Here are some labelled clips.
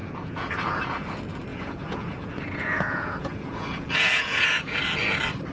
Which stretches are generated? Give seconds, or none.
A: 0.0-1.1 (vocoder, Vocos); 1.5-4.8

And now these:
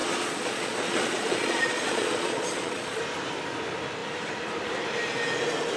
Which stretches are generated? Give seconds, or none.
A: 0.0-3.0 (vocoder, Vocos)

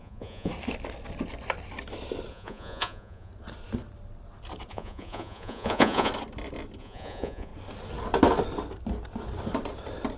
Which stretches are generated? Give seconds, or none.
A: 0.0-0.5 (vocoder, Vocos); 2.3-3.3; 4.7-6.1; 6.8-7.5